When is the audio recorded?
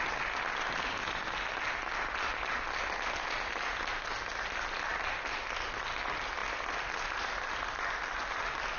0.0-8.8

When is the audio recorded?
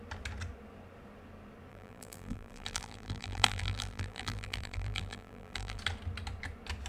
0.0-1.7; 5.8-6.9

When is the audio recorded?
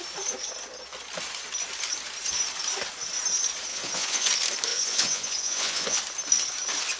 0.0-3.7; 4.3-4.7; 6.0-7.0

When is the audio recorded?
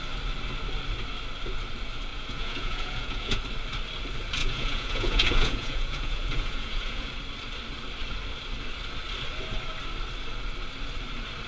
0.0-2.1; 3.4-4.4; 7.1-11.5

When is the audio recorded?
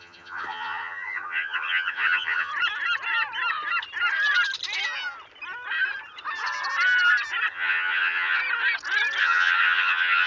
2.5-7.5; 8.4-9.2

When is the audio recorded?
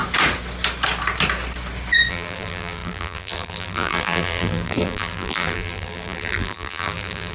0.0-2.1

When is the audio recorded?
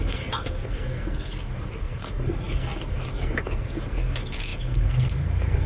none